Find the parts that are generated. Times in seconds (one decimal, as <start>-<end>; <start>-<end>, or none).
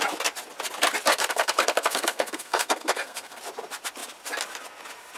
1.1-3.4